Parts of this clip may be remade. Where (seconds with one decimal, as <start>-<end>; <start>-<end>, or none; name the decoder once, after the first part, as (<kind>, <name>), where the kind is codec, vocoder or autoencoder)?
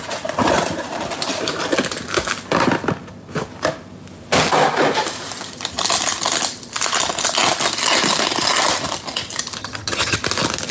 9.6-10.2 (vocoder, HiFi-GAN)